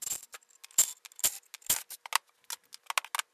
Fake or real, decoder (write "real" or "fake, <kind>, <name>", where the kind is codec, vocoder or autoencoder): real